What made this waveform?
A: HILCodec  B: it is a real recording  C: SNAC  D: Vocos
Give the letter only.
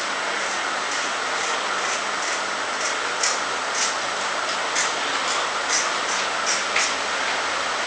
B